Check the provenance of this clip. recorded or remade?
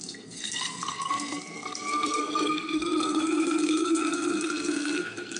remade